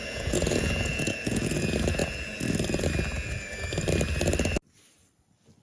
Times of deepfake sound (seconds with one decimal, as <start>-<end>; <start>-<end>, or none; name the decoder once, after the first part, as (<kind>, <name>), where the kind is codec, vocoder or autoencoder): 0.0-1.6 (vocoder, Vocos)